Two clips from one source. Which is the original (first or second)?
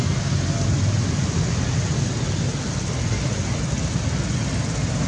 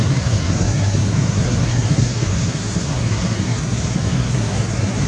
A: first